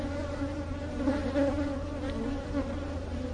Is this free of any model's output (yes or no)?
yes